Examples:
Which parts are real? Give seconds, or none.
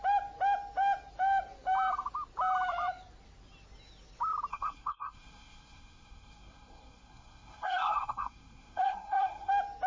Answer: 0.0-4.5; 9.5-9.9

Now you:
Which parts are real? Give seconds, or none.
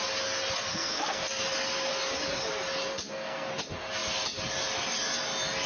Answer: 0.0-0.7; 1.4-2.9; 3.5-5.7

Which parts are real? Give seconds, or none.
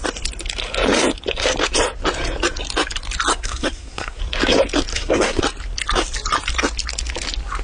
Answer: 0.0-3.3; 4.2-4.9; 5.4-7.6